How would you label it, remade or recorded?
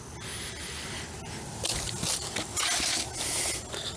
recorded